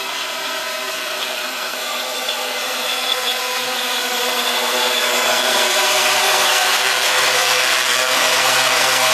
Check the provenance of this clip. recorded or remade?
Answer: remade